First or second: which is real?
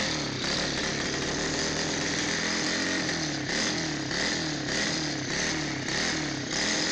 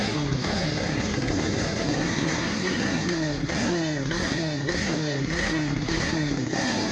first